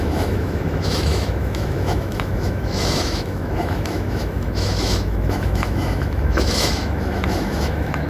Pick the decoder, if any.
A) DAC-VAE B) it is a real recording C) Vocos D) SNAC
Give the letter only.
A